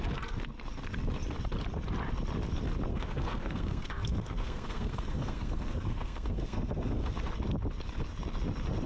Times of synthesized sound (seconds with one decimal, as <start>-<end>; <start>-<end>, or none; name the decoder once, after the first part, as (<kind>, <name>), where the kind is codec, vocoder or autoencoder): 2.9-7.3 (codec, SNAC)